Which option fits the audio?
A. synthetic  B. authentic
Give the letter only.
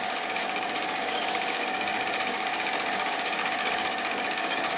A